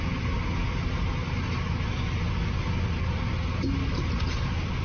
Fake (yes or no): no